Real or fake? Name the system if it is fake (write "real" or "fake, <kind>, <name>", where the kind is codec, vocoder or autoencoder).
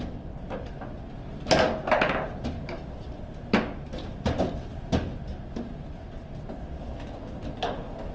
real